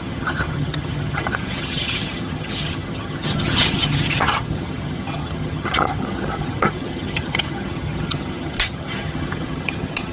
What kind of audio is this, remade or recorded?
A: remade